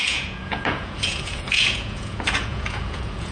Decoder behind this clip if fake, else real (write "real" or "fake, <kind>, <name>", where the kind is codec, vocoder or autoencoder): fake, vocoder, Vocos